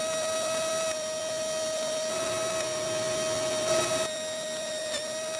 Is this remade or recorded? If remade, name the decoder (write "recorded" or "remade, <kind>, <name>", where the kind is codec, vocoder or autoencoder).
recorded